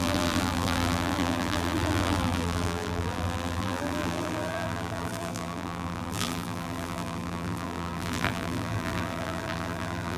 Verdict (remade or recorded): remade